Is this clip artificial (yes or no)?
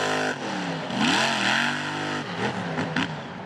no